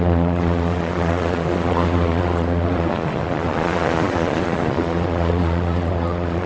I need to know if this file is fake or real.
fake